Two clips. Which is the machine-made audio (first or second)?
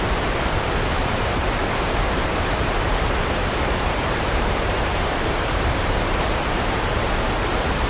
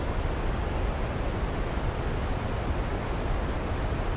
first